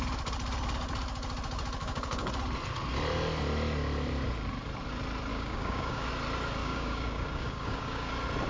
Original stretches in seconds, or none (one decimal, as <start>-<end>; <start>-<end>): 0.0-1.8; 2.3-5.3; 6.1-6.6; 8.1-8.5